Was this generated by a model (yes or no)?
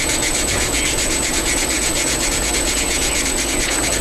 yes